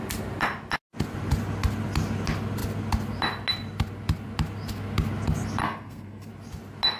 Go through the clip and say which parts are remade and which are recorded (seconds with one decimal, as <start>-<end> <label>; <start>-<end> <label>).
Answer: 0.0-5.6 recorded; 5.6-6.3 remade; 6.3-7.0 recorded